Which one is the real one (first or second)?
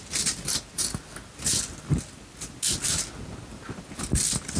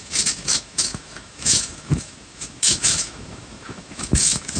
first